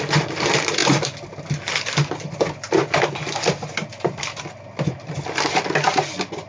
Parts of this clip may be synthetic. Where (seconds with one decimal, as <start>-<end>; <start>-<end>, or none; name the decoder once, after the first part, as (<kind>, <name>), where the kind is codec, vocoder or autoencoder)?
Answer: none